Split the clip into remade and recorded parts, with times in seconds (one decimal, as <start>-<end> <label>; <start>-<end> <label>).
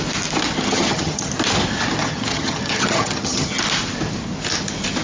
0.0-0.6 recorded; 0.6-1.3 remade; 1.3-2.0 recorded; 2.0-3.6 remade; 3.6-5.0 recorded